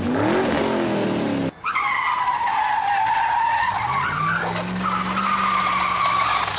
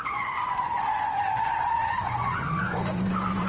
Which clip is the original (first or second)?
first